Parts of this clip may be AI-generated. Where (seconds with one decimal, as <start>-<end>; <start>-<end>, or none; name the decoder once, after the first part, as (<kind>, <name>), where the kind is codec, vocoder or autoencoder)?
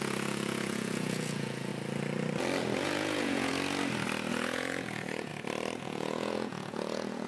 0.0-1.7 (vocoder, Vocos); 2.8-3.5; 4.3-5.3; 5.8-7.3